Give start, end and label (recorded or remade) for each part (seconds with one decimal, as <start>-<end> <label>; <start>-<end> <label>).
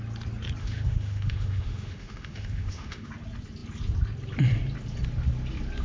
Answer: 0.0-0.6 recorded; 0.6-3.1 remade; 3.1-5.8 recorded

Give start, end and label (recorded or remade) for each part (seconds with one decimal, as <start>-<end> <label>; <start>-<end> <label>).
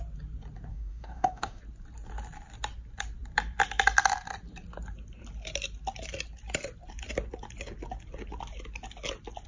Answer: 0.0-0.7 recorded; 0.7-1.6 remade; 1.6-9.5 recorded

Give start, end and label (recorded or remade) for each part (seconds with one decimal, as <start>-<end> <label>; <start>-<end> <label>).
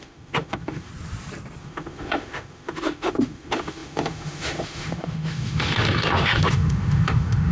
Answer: 0.0-0.9 remade; 0.9-1.6 recorded; 1.6-7.5 remade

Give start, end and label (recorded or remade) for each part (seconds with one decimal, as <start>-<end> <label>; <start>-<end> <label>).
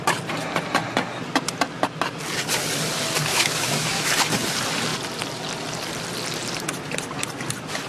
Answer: 0.0-3.3 recorded; 3.3-4.1 remade; 4.1-7.9 recorded